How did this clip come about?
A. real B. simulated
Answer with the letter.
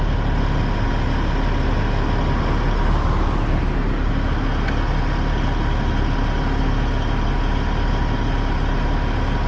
A